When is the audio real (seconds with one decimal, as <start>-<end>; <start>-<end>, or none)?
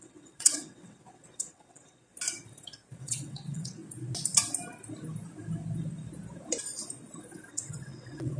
2.1-2.9; 3.8-7.5